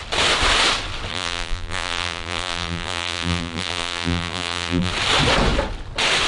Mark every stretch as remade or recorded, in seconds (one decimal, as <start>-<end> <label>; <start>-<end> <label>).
0.0-1.1 recorded; 1.1-4.9 remade; 4.9-6.3 recorded